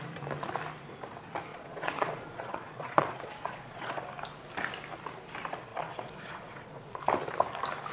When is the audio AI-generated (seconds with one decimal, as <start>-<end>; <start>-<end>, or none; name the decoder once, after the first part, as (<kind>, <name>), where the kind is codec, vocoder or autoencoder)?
1.5-4.0 (vocoder, Vocos); 5.7-7.0